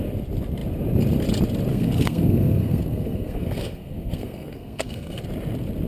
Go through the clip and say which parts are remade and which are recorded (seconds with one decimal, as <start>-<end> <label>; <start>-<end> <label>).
0.0-1.7 recorded; 1.7-5.2 remade; 5.2-5.9 recorded